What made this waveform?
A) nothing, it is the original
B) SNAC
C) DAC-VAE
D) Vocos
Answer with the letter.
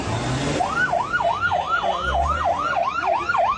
A